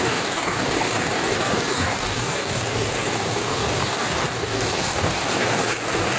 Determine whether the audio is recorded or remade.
remade